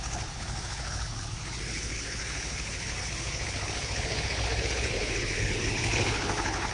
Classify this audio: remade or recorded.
remade